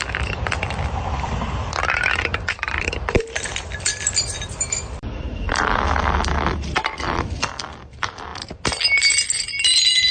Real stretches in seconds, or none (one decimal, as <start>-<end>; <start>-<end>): 8.3-9.5